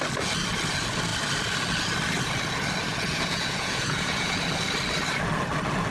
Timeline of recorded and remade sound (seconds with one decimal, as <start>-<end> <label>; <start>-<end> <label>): 0.0-2.9 recorded; 2.9-4.4 remade; 4.4-5.9 recorded